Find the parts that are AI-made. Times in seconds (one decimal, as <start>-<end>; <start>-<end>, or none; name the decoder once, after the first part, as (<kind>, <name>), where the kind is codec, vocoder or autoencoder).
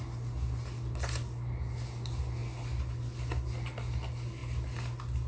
none